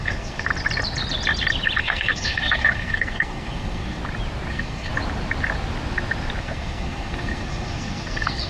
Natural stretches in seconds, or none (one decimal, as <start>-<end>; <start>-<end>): 0.5-1.8; 4.0-4.5; 4.9-6.4